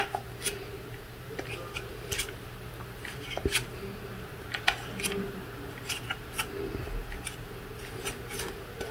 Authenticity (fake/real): real